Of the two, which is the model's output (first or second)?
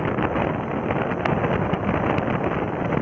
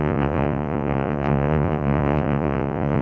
second